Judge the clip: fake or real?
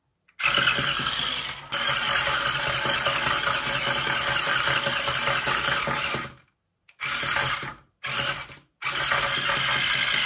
real